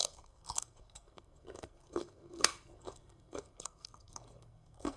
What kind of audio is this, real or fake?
fake